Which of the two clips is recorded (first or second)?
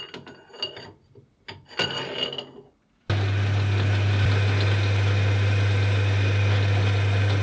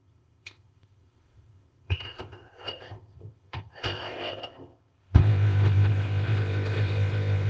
first